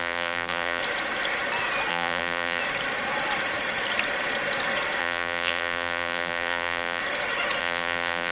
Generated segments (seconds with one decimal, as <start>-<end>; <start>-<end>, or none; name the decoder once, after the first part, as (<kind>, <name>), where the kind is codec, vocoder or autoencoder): 0.0-0.8 (vocoder, BigVGAN v2); 1.9-2.6; 5.0-7.0; 7.6-8.3